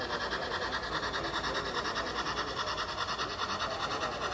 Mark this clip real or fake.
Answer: real